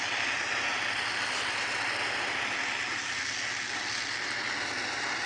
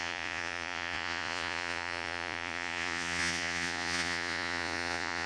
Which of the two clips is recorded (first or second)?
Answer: first